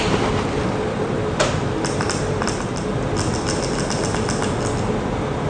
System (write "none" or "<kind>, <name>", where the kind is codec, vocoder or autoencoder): none